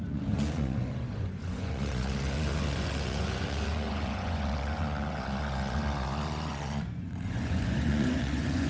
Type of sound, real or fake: fake